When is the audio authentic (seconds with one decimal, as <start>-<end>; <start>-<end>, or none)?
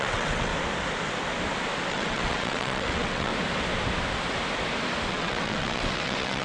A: 0.5-1.9; 3.3-5.1